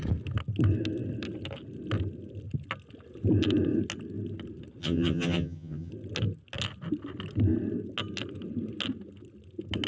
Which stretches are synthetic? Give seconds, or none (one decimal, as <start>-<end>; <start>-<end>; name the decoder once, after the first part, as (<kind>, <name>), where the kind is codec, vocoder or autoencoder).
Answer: 4.8-5.9 (vocoder, HiFi-GAN)